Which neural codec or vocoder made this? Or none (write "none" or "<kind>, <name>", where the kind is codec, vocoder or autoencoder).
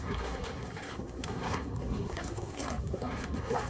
codec, SNAC